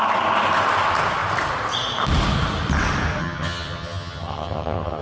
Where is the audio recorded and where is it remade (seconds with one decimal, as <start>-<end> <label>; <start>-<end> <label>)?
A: 0.0-3.2 recorded; 3.2-5.0 remade